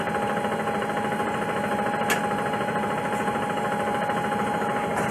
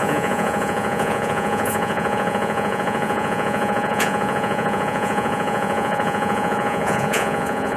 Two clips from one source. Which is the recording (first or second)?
first